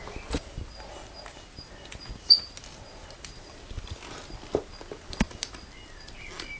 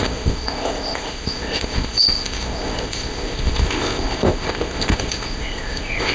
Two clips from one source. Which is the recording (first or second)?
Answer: first